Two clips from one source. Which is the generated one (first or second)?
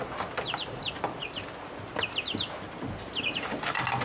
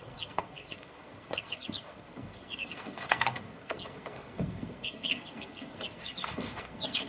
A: second